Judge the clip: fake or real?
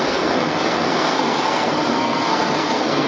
fake